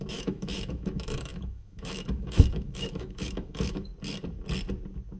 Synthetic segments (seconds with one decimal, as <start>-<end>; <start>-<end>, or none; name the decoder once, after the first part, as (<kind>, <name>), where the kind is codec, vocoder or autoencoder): 0.0-3.9 (autoencoder, DAC-VAE)